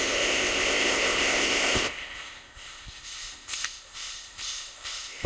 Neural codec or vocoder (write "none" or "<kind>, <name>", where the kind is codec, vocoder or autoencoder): codec, ZipCodec